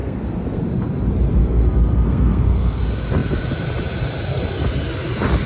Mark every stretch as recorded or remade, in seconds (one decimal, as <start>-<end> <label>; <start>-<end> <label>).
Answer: 0.0-0.6 remade; 0.6-1.4 recorded; 1.4-2.8 remade; 2.8-5.5 recorded